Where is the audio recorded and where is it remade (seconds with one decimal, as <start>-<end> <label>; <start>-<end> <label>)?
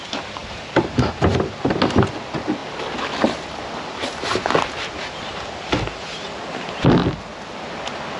0.0-0.4 recorded; 0.4-1.3 remade; 1.3-8.2 recorded